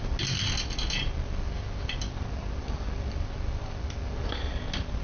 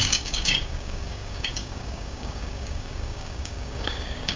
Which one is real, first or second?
first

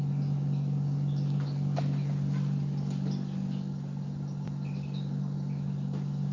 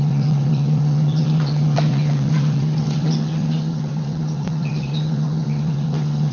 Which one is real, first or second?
first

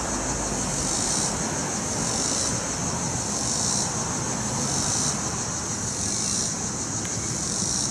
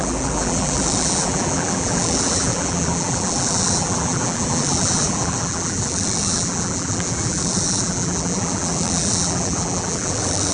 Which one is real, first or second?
first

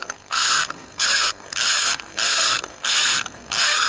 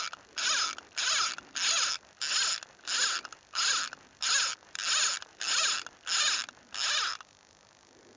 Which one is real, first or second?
second